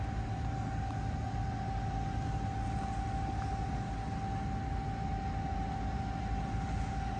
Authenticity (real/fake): real